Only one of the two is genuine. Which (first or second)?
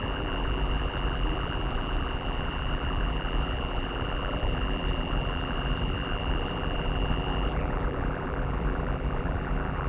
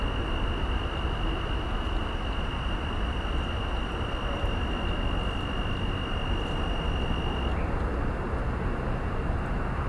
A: second